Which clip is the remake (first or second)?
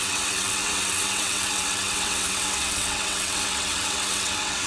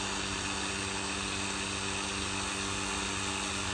first